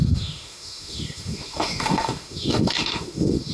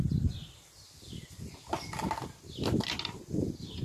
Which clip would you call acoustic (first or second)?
second